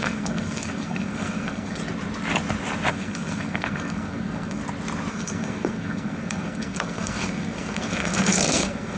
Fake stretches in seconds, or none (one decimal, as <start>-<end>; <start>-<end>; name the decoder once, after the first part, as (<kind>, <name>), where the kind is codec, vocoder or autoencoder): 0.0-1.8 (codec, SNAC); 2.9-4.6; 5.1-9.0